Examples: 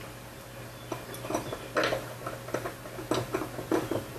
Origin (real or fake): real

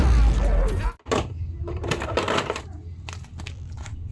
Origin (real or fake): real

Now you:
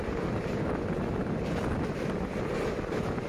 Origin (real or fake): real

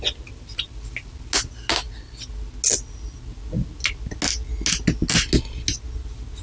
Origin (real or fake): real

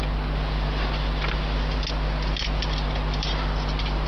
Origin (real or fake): real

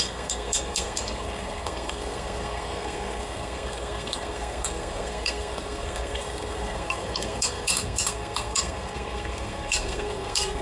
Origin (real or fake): fake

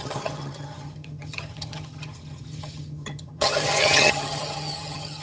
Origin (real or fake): fake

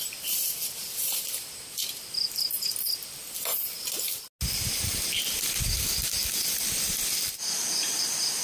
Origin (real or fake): real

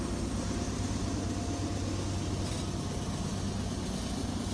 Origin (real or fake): real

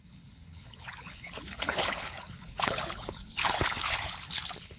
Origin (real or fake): fake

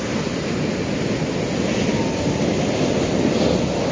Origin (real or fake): real